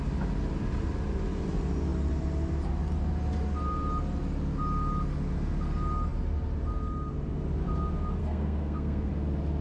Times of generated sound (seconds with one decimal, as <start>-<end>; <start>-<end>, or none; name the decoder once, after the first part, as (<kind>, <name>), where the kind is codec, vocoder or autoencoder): 8.2-9.1 (codec, SNAC)